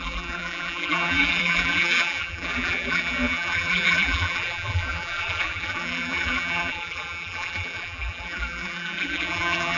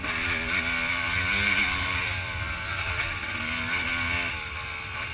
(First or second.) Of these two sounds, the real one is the second